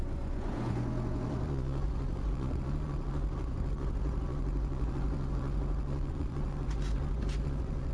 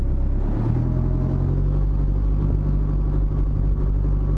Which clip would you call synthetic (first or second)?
first